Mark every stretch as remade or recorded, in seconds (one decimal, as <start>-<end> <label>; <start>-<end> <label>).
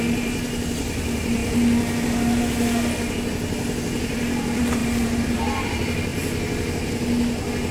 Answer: 0.0-4.8 recorded; 4.8-5.4 remade; 5.4-7.7 recorded